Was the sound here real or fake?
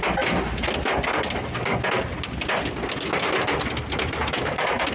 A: real